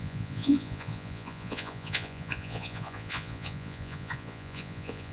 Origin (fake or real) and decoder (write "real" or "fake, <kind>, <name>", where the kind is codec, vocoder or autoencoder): fake, vocoder, Vocos